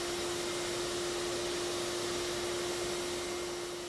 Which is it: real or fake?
real